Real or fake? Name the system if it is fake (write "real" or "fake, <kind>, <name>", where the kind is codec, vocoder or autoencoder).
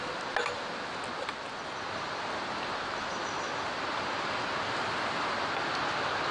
real